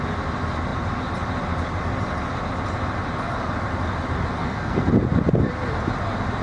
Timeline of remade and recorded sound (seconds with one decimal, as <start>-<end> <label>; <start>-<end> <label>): 0.0-4.4 recorded; 4.4-4.9 remade; 4.9-6.4 recorded